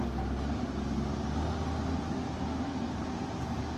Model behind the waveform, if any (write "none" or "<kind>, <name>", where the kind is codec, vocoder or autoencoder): none